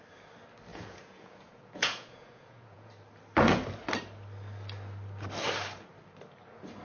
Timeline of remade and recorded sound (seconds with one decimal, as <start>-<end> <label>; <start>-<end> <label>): 0.0-0.7 recorded; 0.7-2.9 remade; 2.9-6.8 recorded